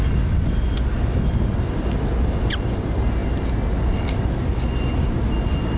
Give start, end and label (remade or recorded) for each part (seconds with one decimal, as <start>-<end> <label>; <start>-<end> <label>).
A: 0.0-5.8 recorded

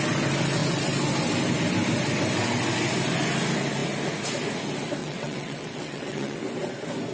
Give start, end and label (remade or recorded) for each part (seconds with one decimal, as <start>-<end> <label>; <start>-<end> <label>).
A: 0.0-5.0 recorded; 5.0-6.4 remade; 6.4-7.1 recorded

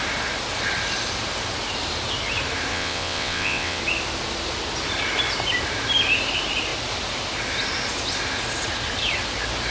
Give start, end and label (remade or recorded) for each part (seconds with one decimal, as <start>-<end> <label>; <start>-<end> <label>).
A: 0.0-2.7 recorded; 2.7-3.8 remade; 3.8-9.7 recorded

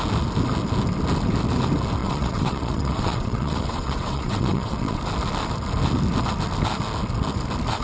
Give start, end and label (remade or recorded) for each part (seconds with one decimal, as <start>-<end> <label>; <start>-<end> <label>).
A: 0.0-2.0 recorded; 2.0-5.0 remade; 5.0-7.8 recorded

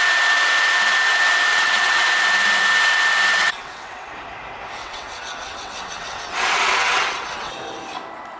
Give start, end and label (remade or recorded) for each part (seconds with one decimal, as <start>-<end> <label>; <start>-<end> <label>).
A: 0.0-1.5 recorded; 1.5-2.0 remade; 2.0-3.4 recorded; 3.4-4.1 remade; 4.1-4.8 recorded; 4.8-7.5 remade; 7.5-8.4 recorded

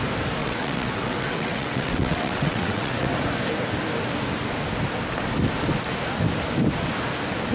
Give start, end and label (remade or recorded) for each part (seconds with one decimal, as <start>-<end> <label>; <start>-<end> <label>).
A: 0.0-0.4 recorded; 0.4-3.1 remade; 3.1-7.5 recorded

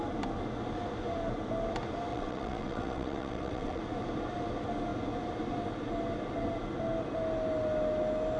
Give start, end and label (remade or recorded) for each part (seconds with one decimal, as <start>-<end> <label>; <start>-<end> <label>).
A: 0.0-2.1 recorded; 2.1-3.8 remade; 3.8-8.4 recorded